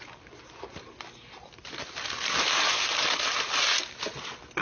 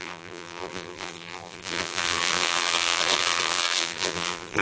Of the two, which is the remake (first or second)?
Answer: second